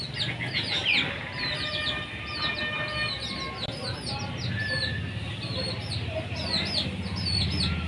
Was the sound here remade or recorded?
recorded